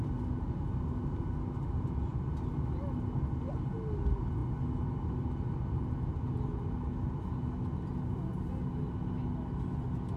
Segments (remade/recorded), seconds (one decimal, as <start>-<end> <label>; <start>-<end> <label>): 0.0-10.2 recorded